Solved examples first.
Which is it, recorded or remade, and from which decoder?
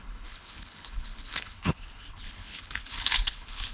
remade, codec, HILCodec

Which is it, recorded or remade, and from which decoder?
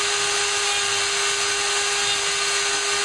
recorded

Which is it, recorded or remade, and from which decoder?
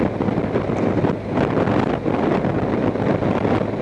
recorded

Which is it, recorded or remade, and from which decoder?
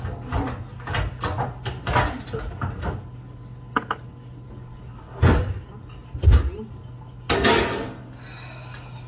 recorded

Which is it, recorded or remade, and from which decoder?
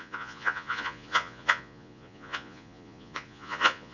remade, vocoder, Vocos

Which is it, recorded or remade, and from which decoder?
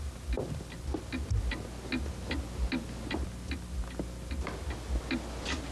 recorded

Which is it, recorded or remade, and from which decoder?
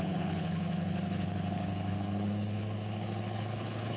remade, codec, HILCodec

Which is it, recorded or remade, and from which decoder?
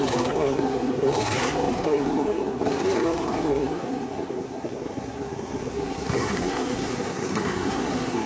remade, codec, SNAC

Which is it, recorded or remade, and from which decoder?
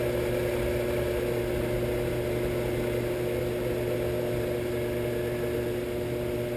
recorded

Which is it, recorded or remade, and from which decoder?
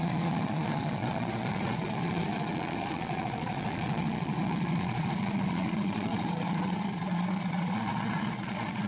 remade, vocoder, Vocos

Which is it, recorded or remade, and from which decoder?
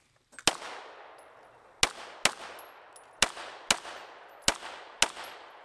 recorded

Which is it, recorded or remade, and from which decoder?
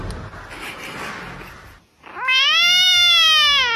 recorded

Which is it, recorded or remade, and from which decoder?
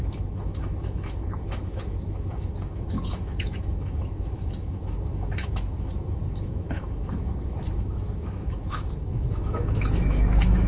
remade, autoencoder, DAC-VAE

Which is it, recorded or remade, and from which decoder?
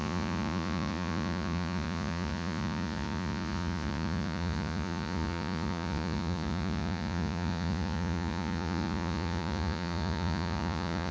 remade, vocoder, Vocos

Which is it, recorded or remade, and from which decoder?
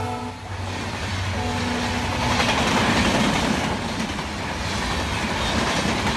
recorded